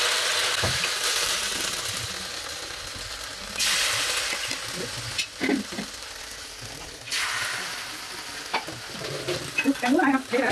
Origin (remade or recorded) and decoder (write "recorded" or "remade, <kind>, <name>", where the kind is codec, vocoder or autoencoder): recorded